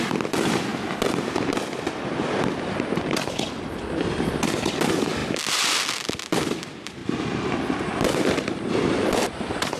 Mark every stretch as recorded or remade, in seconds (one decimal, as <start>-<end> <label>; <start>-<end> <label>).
0.0-0.7 remade; 0.7-1.5 recorded; 1.5-7.0 remade; 7.0-8.4 recorded; 8.4-9.8 remade